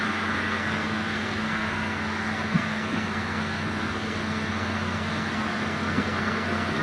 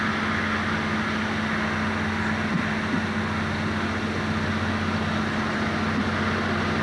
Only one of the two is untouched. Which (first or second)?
second